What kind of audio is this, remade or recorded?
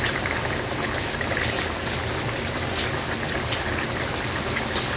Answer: recorded